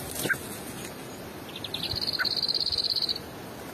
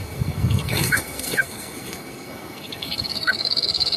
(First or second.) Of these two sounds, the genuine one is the first